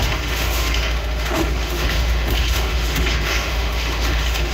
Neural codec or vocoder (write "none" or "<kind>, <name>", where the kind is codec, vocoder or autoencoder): autoencoder, DAC-VAE